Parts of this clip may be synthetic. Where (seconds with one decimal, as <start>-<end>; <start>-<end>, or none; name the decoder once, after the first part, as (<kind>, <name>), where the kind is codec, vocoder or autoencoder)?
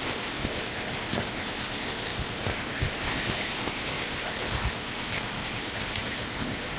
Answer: 0.0-6.8 (codec, ZipCodec)